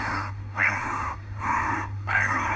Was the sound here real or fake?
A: fake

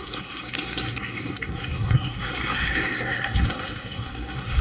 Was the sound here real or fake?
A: fake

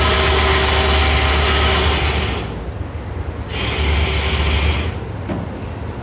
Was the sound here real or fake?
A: real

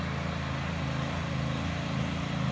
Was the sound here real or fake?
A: real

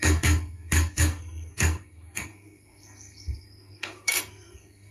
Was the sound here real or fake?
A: fake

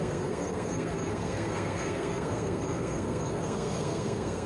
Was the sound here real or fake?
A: fake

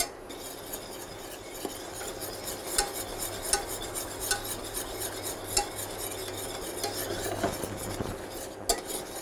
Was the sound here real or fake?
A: real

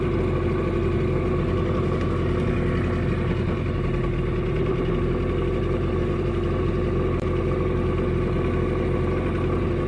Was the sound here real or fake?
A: real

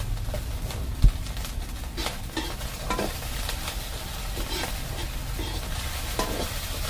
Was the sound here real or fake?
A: real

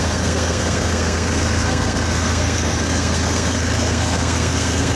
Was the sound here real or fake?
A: fake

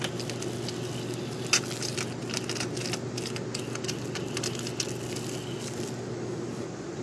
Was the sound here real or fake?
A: real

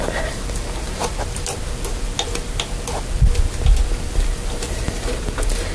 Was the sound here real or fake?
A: real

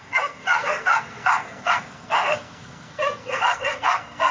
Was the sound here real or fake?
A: fake